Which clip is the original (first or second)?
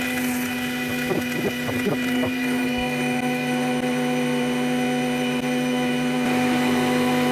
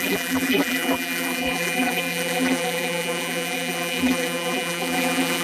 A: first